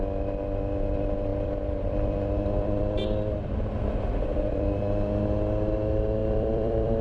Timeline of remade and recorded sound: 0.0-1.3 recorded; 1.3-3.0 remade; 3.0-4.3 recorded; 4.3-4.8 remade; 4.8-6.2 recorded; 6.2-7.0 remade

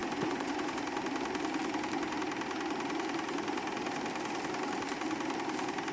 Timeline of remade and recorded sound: 0.0-0.7 remade; 0.7-5.9 recorded